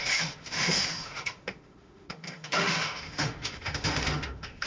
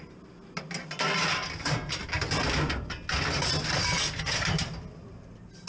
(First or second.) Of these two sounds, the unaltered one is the second